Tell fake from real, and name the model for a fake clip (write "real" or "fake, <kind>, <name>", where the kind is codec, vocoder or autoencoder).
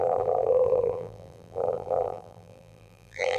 fake, vocoder, BigVGAN v2